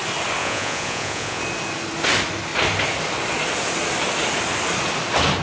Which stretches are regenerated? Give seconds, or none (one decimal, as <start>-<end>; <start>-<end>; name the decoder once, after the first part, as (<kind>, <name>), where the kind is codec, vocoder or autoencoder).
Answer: 0.4-1.4 (vocoder, Vocos)